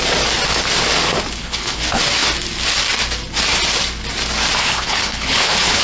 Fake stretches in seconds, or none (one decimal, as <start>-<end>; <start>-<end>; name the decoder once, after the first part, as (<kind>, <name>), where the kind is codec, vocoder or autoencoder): 1.4-2.0 (codec, HILCodec); 4.6-5.8